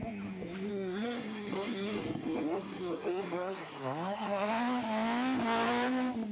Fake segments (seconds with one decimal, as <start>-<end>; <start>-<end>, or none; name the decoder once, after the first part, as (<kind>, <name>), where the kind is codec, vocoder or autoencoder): 0.7-4.5 (codec, SNAC)